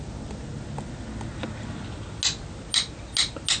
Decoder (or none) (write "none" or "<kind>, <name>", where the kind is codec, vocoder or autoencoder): none